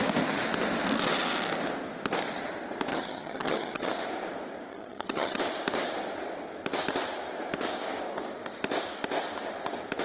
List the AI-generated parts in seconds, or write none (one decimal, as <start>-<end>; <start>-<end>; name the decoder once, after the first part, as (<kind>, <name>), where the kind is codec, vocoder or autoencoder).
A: 2.9-3.9 (vocoder, HiFi-GAN); 4.7-5.4